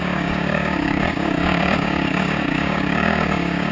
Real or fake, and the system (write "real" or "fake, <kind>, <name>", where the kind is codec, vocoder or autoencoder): fake, codec, DAC